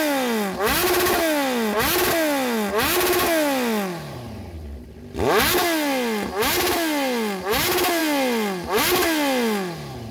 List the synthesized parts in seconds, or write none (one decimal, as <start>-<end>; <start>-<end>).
none

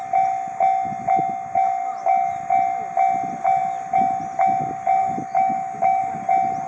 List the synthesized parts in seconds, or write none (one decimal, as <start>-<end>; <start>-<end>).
1.8-2.3; 5.0-6.0

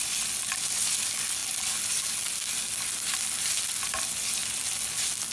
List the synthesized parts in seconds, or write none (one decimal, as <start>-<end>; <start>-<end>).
none

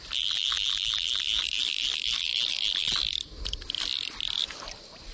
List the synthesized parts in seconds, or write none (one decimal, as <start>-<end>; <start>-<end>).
none

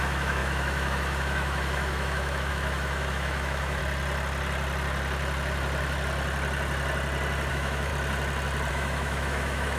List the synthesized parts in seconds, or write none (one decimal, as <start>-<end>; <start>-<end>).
0.0-3.8; 7.5-7.9; 8.7-9.8

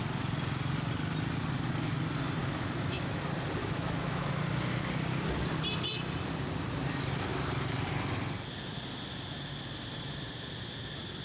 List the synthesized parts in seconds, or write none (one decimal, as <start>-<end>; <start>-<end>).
2.4-3.2; 3.6-4.3